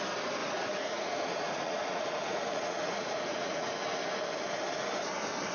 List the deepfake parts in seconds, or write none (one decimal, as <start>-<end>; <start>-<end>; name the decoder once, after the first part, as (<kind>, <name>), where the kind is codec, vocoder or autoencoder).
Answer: 0.4-3.7 (vocoder, Vocos)